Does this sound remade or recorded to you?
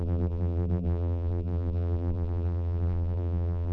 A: remade